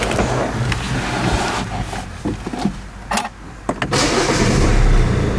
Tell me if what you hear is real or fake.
real